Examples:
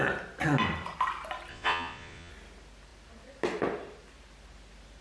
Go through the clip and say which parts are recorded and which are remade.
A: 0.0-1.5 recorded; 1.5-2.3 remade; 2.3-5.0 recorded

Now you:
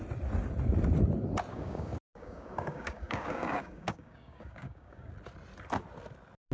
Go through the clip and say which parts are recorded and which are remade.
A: 0.0-1.5 recorded; 1.5-5.1 remade; 5.1-6.5 recorded

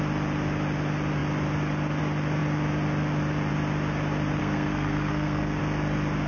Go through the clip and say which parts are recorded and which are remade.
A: 0.0-4.4 recorded; 4.4-5.6 remade; 5.6-6.3 recorded

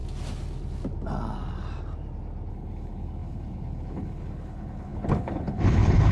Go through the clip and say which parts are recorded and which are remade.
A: 0.0-2.5 recorded; 2.5-6.1 remade

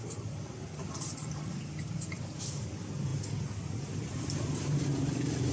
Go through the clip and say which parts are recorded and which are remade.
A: 0.0-5.5 recorded

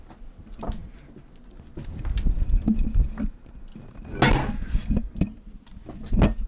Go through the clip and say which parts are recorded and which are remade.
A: 0.0-6.5 recorded

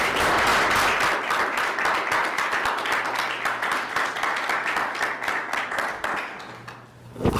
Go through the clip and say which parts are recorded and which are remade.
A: 0.0-7.4 recorded